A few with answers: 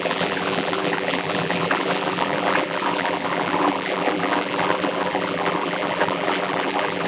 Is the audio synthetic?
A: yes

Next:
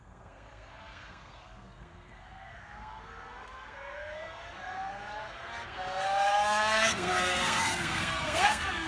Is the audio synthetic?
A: yes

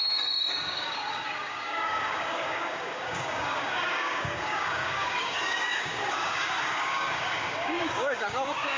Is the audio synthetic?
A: yes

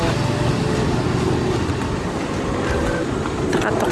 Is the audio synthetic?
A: no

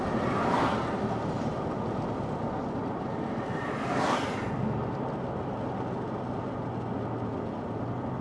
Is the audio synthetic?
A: no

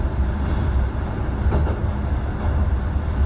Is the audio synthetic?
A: no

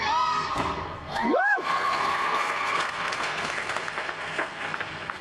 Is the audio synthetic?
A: yes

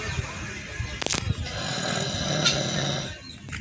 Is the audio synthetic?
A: no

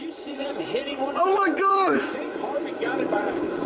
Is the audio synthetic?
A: yes